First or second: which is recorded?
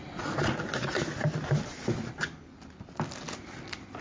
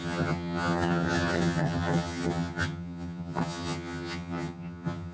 first